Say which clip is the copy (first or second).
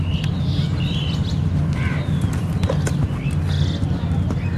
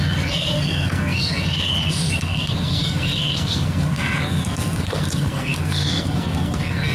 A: second